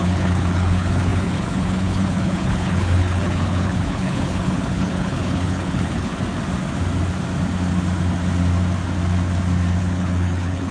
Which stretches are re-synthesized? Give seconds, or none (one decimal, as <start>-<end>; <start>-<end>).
0.0-6.1; 9.8-10.7